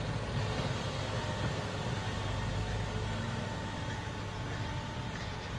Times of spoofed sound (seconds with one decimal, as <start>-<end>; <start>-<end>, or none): none